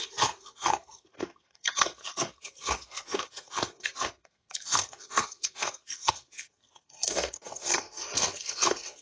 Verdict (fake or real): fake